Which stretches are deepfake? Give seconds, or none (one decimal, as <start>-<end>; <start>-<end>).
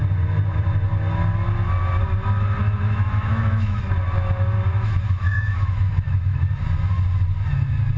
2.6-3.8; 4.7-6.4